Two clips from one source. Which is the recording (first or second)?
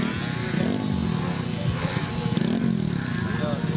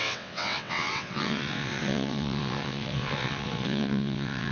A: first